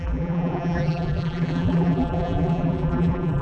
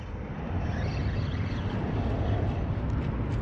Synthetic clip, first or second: first